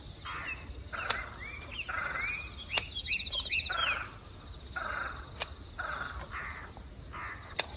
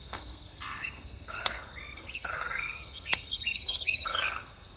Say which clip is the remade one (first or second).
second